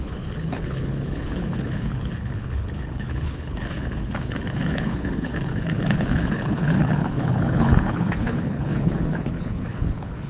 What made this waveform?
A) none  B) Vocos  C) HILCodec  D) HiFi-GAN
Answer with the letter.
C